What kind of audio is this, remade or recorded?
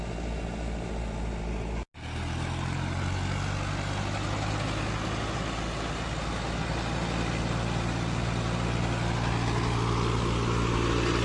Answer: recorded